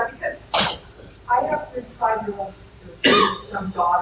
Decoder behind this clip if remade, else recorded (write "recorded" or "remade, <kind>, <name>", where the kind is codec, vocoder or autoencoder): remade, vocoder, BigVGAN v2